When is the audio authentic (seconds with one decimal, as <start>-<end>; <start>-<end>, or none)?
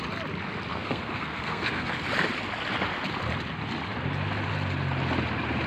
0.0-0.7; 1.9-5.7